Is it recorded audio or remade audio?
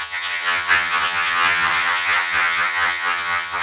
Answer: remade